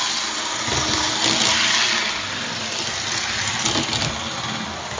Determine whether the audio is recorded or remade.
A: recorded